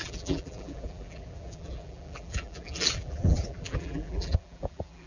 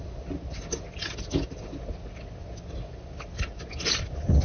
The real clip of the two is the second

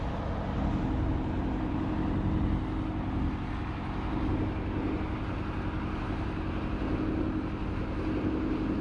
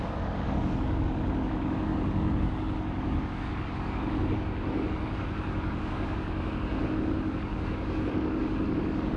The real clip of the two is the first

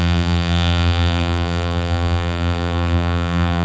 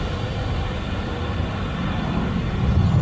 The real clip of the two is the second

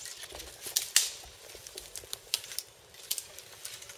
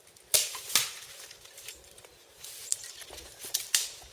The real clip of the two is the first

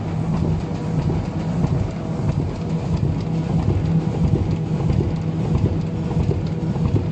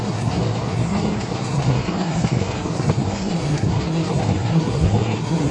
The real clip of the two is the first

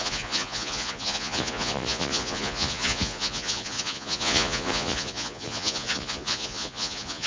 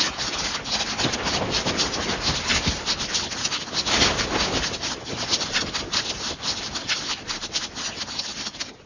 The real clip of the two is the second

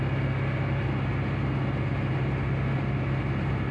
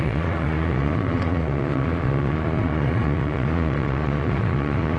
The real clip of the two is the first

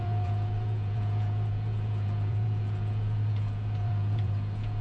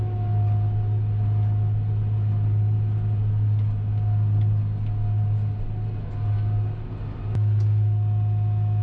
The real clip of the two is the second